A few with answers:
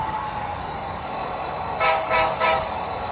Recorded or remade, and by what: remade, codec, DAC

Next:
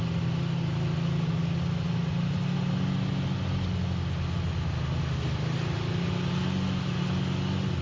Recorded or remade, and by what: recorded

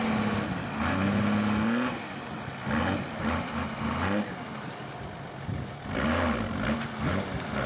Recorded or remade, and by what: recorded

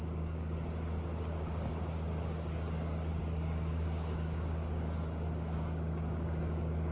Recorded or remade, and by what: remade, codec, DAC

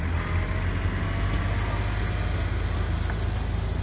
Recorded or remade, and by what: recorded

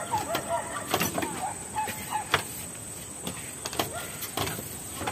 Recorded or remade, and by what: recorded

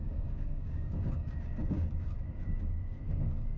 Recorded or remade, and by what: remade, codec, DAC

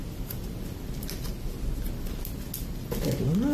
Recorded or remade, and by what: recorded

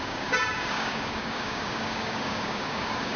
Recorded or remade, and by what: remade, codec, DAC